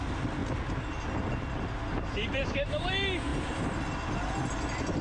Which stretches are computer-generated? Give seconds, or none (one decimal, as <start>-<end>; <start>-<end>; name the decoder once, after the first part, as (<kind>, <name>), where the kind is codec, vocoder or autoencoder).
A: none